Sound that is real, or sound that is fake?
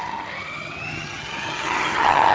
fake